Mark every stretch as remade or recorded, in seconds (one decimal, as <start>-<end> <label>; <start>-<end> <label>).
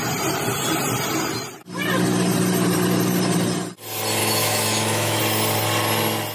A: 0.0-4.2 recorded; 4.2-5.2 remade; 5.2-6.3 recorded